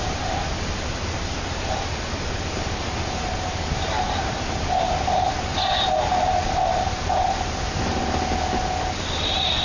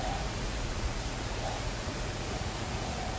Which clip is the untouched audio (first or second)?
first